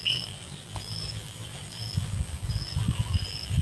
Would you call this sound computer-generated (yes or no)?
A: yes